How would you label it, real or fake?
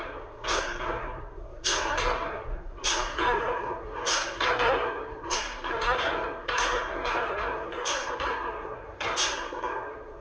fake